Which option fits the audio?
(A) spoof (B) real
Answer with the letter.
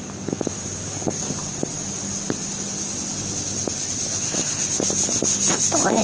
B